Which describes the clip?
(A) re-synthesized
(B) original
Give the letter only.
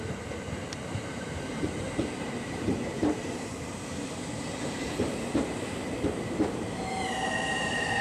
A